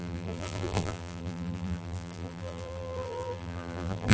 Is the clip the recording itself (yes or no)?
no